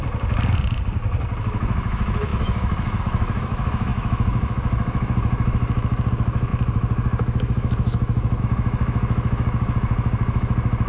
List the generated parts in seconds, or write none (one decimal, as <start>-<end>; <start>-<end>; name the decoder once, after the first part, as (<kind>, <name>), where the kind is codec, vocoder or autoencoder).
1.4-10.9 (autoencoder, DAC-VAE)